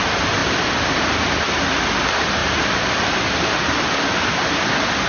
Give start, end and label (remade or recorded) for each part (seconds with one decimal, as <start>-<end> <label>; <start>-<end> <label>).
0.0-0.4 recorded; 0.4-1.2 remade; 1.2-2.4 recorded; 2.4-3.0 remade; 3.0-5.1 recorded

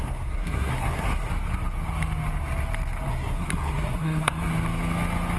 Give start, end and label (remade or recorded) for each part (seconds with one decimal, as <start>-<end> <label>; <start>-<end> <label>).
0.0-1.3 remade; 1.3-3.1 recorded; 3.1-4.5 remade; 4.5-5.4 recorded

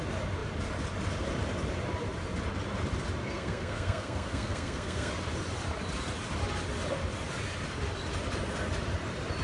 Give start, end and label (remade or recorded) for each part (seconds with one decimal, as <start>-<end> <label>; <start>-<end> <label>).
0.0-3.2 recorded; 3.2-5.1 remade; 5.1-9.4 recorded

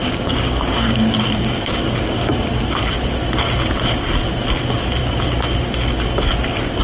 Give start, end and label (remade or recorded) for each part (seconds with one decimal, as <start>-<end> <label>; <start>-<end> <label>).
0.0-2.3 remade; 2.3-5.0 recorded; 5.0-5.7 remade; 5.7-6.8 recorded

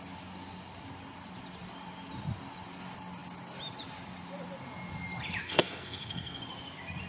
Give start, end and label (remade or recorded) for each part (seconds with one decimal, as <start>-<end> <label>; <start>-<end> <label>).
0.0-5.4 recorded; 5.4-6.4 remade; 6.4-7.1 recorded

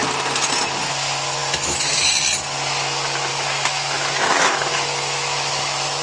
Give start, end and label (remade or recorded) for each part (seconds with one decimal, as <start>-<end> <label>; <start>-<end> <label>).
0.0-1.4 recorded; 1.4-2.1 remade; 2.1-3.3 recorded; 3.3-6.0 remade